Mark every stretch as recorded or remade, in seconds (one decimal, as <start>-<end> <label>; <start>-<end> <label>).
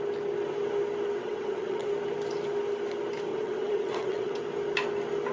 0.0-1.2 recorded; 1.2-1.9 remade; 1.9-3.3 recorded; 3.3-4.4 remade; 4.4-5.3 recorded